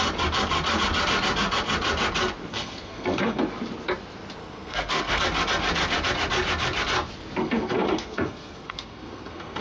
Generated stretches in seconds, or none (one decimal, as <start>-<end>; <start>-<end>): 2.5-3.4; 4.4-5.2; 7.4-9.6